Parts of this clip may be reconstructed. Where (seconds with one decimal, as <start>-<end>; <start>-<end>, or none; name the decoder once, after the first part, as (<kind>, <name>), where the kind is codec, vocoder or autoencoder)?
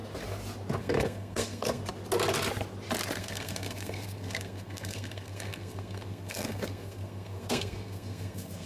0.8-1.8 (codec, SNAC); 3.2-8.7